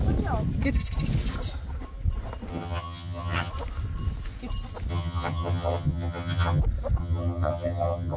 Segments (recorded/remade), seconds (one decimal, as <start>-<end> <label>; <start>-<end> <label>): 0.0-2.5 recorded; 2.5-3.5 remade; 3.5-4.9 recorded; 4.9-6.6 remade; 6.6-7.0 recorded; 7.0-8.2 remade